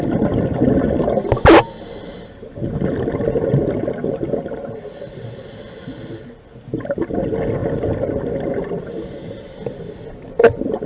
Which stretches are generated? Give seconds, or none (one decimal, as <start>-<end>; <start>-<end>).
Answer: none